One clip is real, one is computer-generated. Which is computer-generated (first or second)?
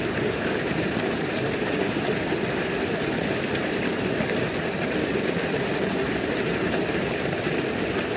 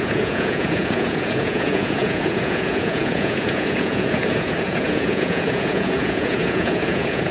second